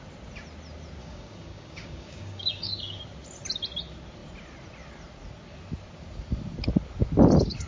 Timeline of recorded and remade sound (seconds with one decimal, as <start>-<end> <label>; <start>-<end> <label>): 0.0-1.0 recorded; 1.0-3.0 remade; 3.0-7.7 recorded